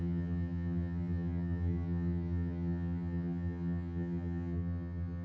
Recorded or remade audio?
remade